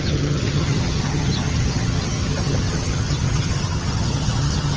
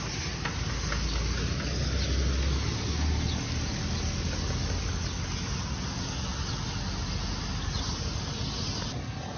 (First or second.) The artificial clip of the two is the first